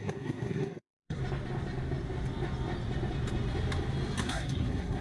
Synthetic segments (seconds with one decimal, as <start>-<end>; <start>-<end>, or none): 0.0-1.2; 4.2-5.0